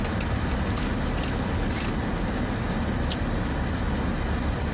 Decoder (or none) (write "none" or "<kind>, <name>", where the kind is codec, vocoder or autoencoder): none